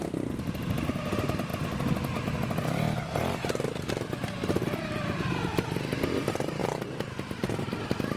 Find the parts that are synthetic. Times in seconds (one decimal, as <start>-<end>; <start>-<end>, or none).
none